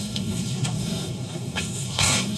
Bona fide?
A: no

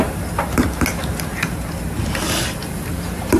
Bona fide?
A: yes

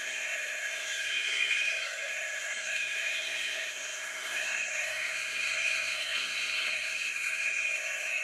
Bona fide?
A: no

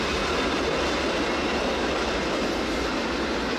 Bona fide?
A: yes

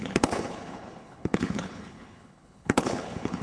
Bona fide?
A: no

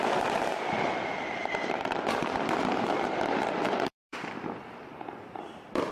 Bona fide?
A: no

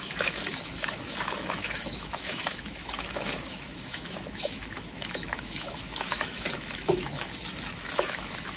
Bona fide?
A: no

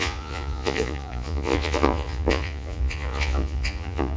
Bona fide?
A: no